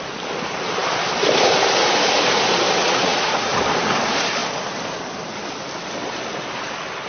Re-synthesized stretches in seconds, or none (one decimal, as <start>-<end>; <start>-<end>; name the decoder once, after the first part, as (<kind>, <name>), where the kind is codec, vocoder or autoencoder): 2.8-3.6 (vocoder, Vocos)